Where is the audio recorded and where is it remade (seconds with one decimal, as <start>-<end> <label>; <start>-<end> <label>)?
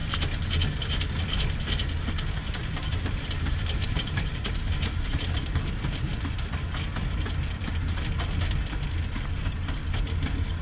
0.0-2.5 recorded; 2.5-6.1 remade; 6.1-9.4 recorded; 9.4-9.8 remade; 9.8-10.6 recorded